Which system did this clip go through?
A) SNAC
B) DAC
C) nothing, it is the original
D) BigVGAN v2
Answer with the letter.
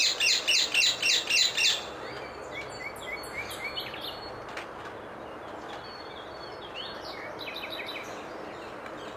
C